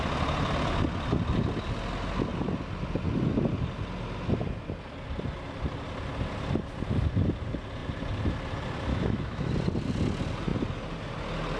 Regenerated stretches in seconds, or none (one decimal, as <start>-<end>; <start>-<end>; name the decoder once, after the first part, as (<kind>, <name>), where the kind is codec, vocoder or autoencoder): 8.9-9.5 (autoencoder, DAC-VAE)